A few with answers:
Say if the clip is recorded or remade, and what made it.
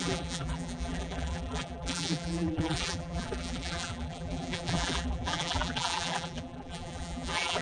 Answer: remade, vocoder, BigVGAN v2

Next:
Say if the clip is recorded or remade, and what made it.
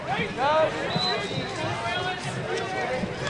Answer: recorded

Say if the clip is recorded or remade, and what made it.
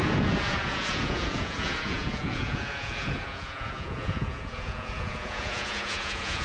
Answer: remade, vocoder, Vocos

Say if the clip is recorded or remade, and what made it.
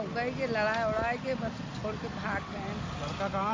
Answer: recorded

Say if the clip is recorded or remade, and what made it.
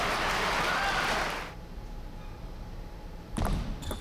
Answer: recorded